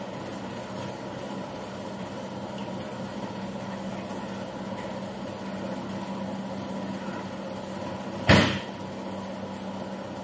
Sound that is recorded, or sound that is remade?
recorded